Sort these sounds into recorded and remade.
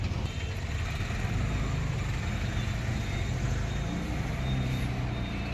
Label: recorded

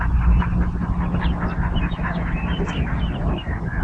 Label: recorded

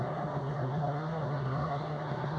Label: remade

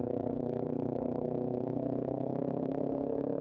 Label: remade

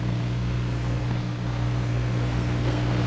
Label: remade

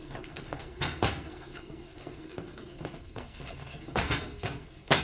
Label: remade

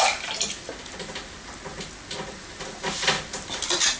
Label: recorded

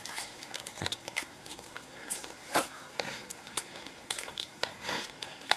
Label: remade